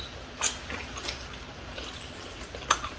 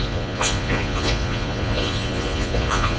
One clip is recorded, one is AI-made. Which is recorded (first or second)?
first